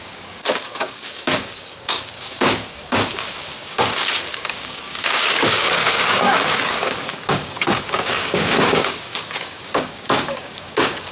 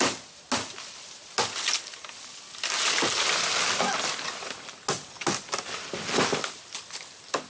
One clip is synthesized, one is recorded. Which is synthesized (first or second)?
first